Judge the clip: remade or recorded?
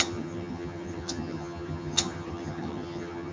remade